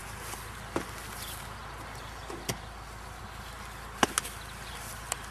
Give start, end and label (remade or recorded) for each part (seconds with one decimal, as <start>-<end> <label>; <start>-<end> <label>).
0.0-5.3 recorded